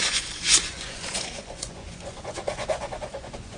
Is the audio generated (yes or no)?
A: yes